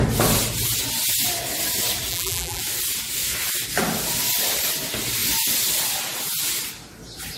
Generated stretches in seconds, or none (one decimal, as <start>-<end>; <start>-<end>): 2.1-2.6